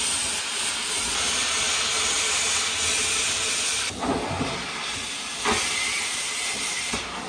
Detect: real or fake real